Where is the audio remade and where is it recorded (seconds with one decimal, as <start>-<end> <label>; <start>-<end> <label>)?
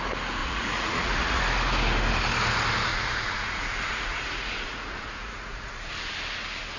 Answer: 0.0-0.4 recorded; 0.4-1.4 remade; 1.4-2.9 recorded; 2.9-5.9 remade; 5.9-6.8 recorded